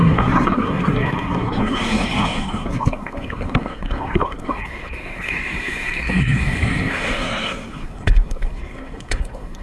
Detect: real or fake fake